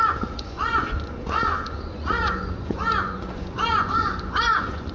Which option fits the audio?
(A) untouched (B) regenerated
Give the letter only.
B